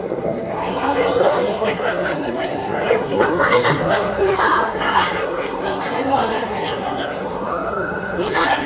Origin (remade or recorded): remade